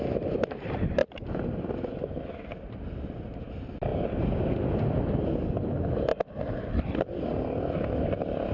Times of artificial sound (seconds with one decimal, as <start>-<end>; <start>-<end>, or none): 6.1-6.6